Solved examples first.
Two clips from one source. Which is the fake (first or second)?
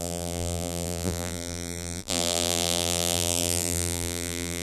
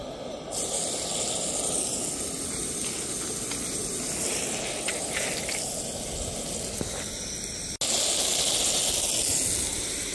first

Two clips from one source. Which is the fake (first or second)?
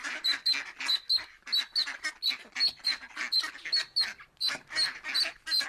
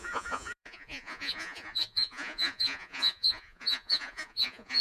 second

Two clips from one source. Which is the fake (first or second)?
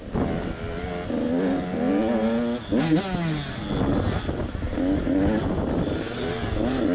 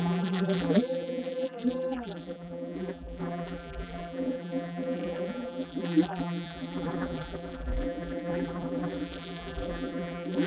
second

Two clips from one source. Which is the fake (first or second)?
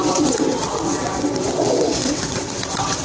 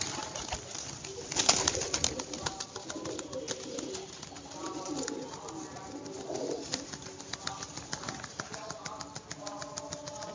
first